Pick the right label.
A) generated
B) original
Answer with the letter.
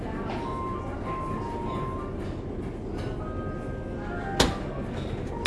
B